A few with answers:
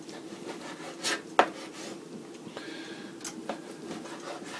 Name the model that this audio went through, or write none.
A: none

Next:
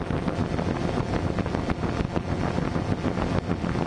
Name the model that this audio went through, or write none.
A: none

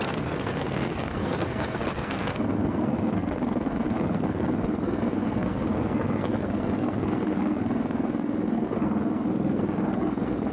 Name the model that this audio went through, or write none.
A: codec, SNAC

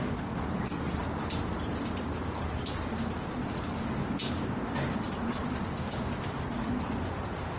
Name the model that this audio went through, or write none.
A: none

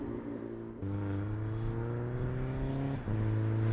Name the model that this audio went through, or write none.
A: none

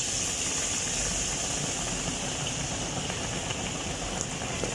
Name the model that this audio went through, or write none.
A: none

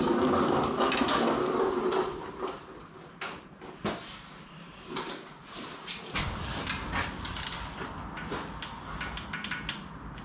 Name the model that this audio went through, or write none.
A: none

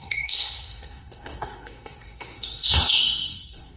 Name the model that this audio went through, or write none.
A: codec, SNAC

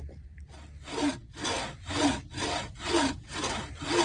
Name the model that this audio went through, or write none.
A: none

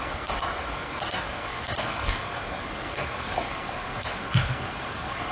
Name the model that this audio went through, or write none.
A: codec, SNAC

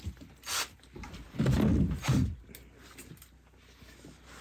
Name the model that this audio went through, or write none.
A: none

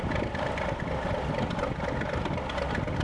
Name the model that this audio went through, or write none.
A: none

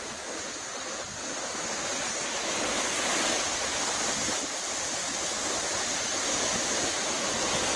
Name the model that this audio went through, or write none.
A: none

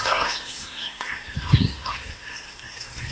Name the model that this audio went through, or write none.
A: codec, SNAC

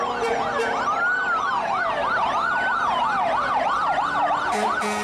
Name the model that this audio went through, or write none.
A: none